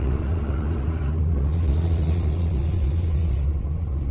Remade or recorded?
remade